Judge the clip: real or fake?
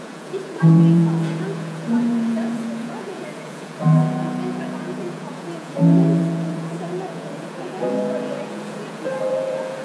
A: fake